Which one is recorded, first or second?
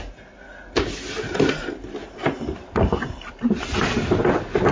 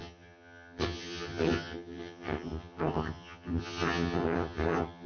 first